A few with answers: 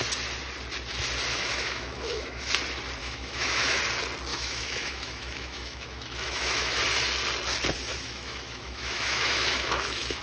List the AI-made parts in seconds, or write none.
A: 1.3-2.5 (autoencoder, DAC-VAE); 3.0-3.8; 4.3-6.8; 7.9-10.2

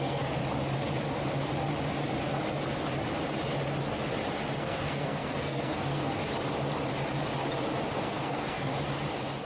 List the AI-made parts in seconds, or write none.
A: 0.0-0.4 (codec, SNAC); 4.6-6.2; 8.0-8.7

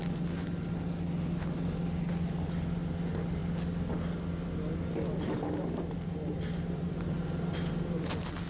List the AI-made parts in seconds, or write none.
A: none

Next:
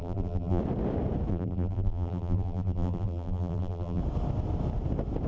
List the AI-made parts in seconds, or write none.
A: 0.0-0.6 (vocoder, BigVGAN v2); 1.3-4.0

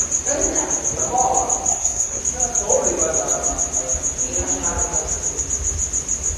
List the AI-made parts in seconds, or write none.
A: 1.7-2.2 (codec, SNAC)

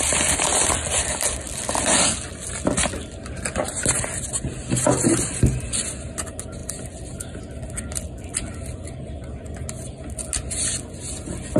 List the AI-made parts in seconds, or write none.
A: none

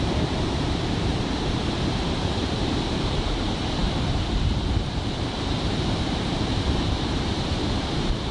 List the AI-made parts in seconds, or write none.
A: 0.0-8.3 (vocoder, BigVGAN v2)